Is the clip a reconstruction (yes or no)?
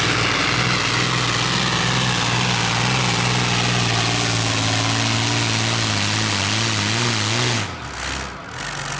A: no